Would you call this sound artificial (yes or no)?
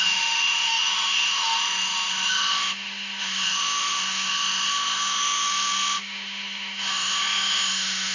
yes